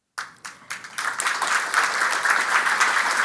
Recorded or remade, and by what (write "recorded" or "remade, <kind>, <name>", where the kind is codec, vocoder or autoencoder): recorded